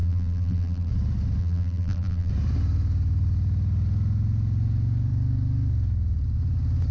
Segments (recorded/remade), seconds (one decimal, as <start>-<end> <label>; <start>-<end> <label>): 0.0-0.9 remade; 0.9-1.4 recorded; 1.4-2.3 remade; 2.3-6.9 recorded